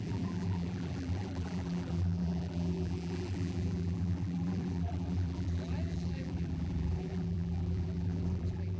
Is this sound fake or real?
fake